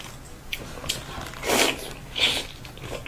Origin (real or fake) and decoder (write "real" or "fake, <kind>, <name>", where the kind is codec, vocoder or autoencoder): real